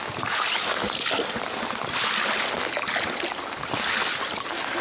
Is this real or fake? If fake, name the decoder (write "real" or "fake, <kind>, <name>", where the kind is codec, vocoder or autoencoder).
real